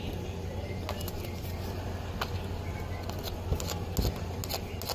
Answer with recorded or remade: recorded